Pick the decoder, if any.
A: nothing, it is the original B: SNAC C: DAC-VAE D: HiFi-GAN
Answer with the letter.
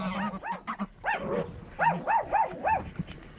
A